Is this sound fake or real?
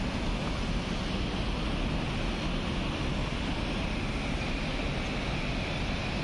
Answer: real